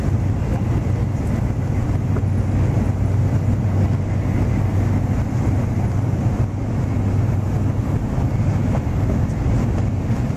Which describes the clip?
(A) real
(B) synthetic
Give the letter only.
A